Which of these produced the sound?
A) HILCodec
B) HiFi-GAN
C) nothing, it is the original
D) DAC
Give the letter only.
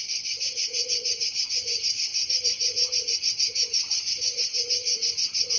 B